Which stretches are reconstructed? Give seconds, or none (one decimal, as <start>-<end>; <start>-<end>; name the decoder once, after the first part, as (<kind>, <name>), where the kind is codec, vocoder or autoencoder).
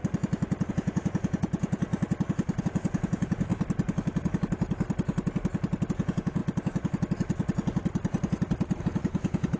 0.7-1.9 (vocoder, Vocos); 2.6-3.5; 5.9-6.4; 8.8-9.6